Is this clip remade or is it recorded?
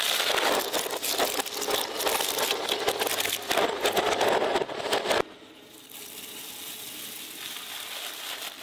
recorded